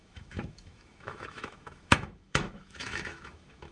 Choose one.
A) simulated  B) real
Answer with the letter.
A